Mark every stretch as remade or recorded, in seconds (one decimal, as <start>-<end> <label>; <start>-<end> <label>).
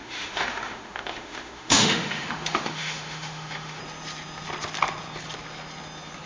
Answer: 0.0-3.8 remade; 3.8-6.3 recorded